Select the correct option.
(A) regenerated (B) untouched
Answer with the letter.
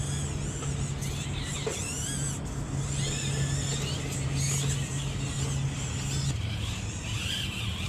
B